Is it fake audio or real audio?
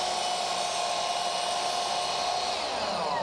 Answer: real